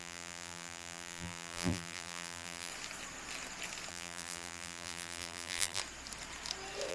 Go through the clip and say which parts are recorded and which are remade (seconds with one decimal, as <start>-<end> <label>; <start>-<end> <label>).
0.0-2.7 remade; 2.7-3.9 recorded; 3.9-5.8 remade; 5.8-6.9 recorded